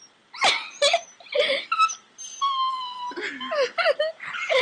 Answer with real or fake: real